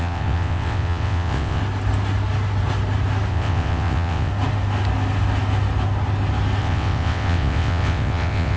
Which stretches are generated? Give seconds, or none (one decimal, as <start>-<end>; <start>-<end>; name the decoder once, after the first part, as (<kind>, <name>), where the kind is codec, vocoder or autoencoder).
0.0-1.6 (vocoder, WaveNeXt); 3.3-4.3; 6.6-8.6

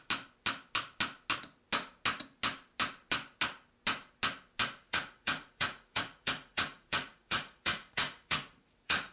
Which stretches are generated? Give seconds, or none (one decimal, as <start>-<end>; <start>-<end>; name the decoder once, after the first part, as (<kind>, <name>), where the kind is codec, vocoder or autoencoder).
4.8-9.1 (vocoder, Vocos)

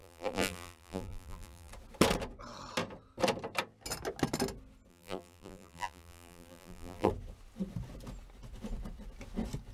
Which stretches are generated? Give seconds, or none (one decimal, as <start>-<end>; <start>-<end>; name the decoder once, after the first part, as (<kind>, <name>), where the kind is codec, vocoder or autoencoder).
0.0-1.7 (vocoder, BigVGAN v2); 4.9-7.1